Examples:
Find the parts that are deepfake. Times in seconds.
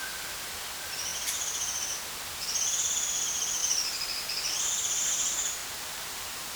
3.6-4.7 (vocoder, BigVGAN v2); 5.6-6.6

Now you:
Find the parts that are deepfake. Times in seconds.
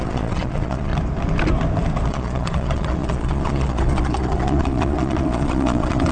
0.0-0.9 (vocoder, Vocos); 2.1-6.1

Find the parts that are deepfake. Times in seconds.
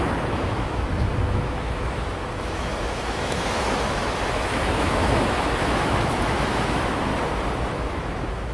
0.0-7.1 (autoencoder, DAC-VAE); 7.6-8.5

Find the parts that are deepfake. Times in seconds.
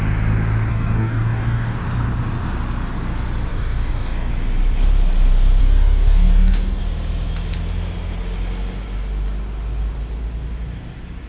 0.7-1.8 (codec, DAC); 3.5-4.3; 5.6-6.8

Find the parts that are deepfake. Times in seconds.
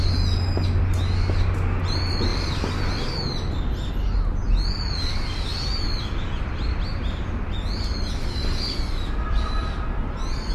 none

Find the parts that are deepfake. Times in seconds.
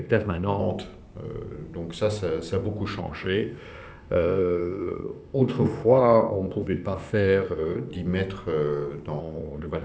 0.0-0.6 (codec, ZipCodec); 3.0-7.9; 9.2-9.8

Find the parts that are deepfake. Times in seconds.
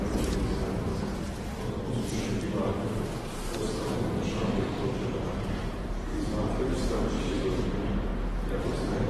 0.0-0.9 (vocoder, BigVGAN v2); 2.4-8.1; 8.6-9.1